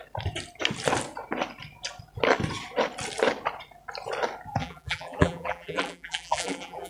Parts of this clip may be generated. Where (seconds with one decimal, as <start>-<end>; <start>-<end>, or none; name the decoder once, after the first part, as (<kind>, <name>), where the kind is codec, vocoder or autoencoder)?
4.6-6.9 (vocoder, BigVGAN v2)